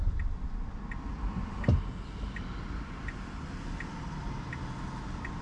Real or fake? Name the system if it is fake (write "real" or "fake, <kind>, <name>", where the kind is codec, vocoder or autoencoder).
real